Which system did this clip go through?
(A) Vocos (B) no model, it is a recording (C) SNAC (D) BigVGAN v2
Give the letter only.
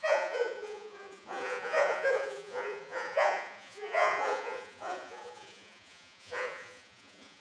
A